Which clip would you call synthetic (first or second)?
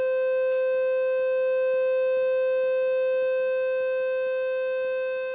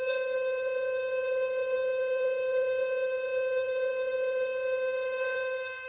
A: second